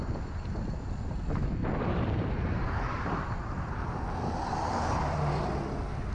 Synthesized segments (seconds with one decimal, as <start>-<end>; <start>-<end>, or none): 1.6-3.2; 4.5-5.5